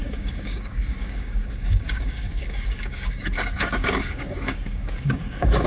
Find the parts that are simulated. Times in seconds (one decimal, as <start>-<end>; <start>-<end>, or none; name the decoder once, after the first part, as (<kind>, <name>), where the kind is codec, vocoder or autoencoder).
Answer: 0.0-5.7 (codec, DAC)